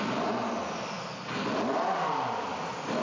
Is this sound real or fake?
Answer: real